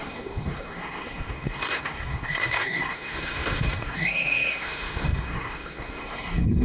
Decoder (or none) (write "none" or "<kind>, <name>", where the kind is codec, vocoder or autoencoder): codec, SNAC